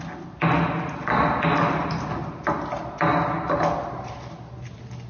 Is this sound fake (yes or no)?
no